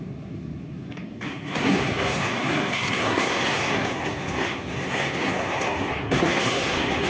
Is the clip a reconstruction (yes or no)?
yes